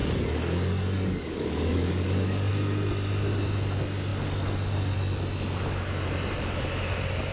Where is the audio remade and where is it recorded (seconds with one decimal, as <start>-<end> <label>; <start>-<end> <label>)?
0.0-2.5 remade; 2.5-7.3 recorded